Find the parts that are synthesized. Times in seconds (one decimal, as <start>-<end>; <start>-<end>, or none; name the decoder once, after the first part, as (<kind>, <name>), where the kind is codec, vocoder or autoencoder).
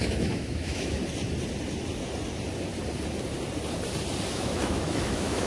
0.0-1.0 (autoencoder, DAC-VAE); 4.3-5.5